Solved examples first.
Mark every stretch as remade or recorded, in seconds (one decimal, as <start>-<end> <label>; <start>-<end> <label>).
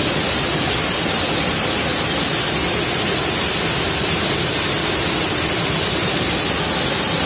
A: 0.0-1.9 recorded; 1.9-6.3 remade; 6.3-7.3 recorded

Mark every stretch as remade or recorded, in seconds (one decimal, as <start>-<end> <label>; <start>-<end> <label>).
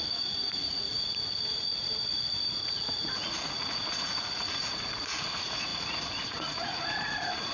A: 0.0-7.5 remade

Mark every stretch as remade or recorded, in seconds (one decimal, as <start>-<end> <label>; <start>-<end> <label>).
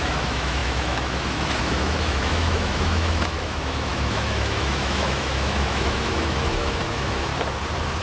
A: 0.0-7.3 remade; 7.3-8.0 recorded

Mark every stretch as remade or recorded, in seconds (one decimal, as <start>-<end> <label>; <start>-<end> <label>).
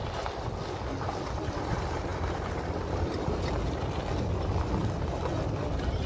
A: 0.0-6.1 recorded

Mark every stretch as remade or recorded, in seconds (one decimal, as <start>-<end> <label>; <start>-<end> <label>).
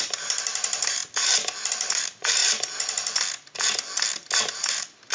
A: 0.0-1.0 remade; 1.0-1.7 recorded; 1.7-2.4 remade; 2.4-4.5 recorded; 4.5-5.1 remade